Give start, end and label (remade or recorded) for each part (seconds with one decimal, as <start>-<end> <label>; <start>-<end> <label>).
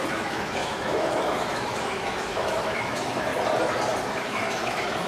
0.0-3.3 remade; 3.3-4.1 recorded; 4.1-5.1 remade